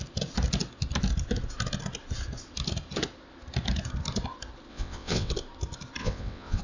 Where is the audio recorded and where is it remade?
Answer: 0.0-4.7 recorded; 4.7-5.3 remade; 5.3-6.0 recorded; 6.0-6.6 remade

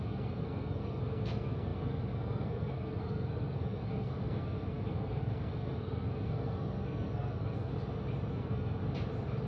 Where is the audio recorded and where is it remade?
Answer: 0.0-7.7 remade; 7.7-8.3 recorded; 8.3-8.8 remade; 8.8-9.5 recorded

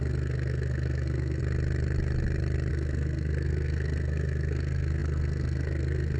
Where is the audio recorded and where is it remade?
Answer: 0.0-1.4 remade; 1.4-2.7 recorded; 2.7-6.2 remade

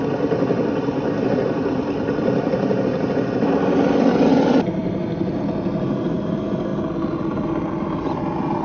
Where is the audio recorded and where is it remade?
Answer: 0.0-8.6 recorded

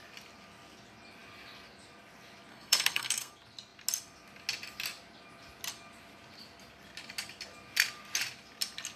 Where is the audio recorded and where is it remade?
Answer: 0.0-2.5 recorded; 2.5-3.3 remade; 3.3-9.0 recorded